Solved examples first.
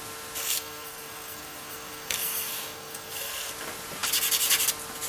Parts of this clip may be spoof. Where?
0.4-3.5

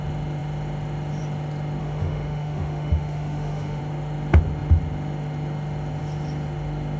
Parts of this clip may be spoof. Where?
1.8-3.8

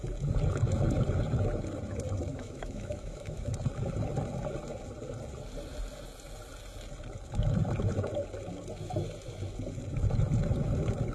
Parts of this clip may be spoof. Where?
2.3-3.5

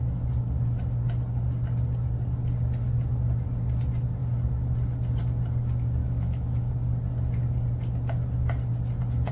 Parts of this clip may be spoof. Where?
6.0-6.7